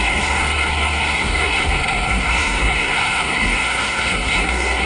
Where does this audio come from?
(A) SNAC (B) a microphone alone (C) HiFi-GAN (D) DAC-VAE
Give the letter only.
A